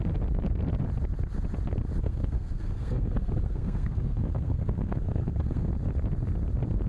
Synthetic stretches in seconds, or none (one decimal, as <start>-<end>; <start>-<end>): 2.0-5.7